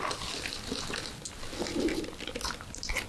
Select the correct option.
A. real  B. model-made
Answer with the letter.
A